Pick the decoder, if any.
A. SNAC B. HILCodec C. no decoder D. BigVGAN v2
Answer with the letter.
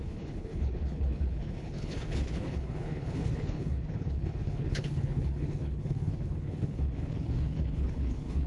B